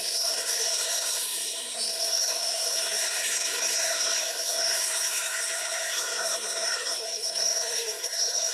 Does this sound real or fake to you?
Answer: fake